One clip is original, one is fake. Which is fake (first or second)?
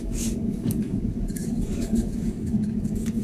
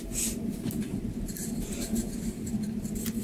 first